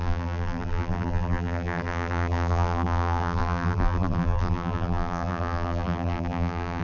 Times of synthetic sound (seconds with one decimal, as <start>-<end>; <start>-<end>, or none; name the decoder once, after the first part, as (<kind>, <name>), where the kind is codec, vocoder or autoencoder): 0.0-6.8 (vocoder, BigVGAN v2)